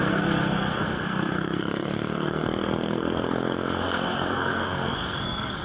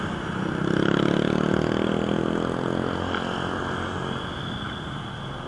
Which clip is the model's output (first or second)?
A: first